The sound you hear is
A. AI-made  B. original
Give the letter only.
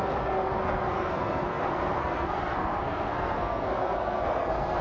A